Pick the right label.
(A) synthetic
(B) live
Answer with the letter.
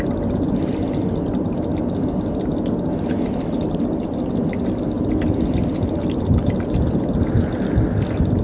B